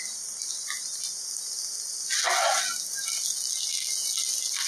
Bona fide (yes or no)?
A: yes